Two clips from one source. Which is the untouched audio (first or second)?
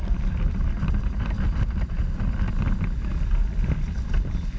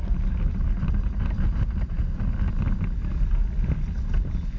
second